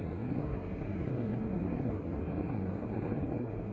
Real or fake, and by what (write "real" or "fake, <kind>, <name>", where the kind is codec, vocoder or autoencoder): fake, codec, SNAC